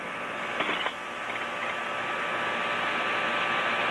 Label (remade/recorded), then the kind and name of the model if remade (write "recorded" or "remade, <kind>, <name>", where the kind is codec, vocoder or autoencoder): recorded